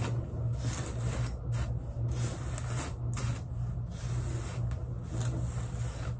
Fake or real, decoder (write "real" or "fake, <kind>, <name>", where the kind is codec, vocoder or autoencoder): real